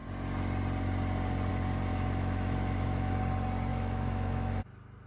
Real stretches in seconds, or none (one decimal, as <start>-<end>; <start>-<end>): 0.0-1.9; 3.2-3.7; 4.6-5.1